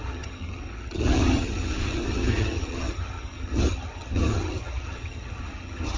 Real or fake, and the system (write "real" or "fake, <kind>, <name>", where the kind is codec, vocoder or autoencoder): fake, vocoder, HiFi-GAN